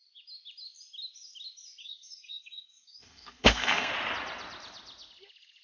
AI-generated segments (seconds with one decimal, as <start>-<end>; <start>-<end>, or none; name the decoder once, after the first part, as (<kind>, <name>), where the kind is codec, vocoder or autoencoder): 1.8-3.9 (codec, SNAC)